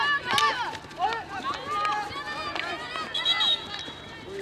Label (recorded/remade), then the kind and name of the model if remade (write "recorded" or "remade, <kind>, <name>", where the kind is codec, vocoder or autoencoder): recorded